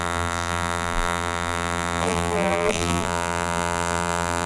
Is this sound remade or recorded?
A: remade